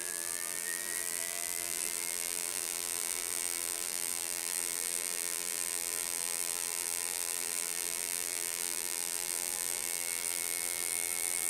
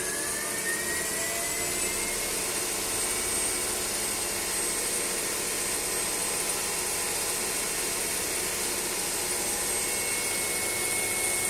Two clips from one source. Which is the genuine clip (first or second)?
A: second